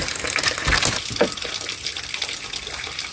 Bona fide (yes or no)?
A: yes